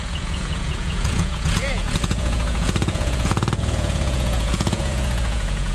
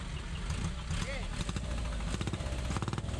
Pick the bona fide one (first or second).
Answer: second